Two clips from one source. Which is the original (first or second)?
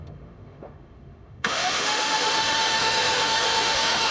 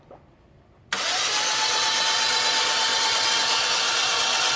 second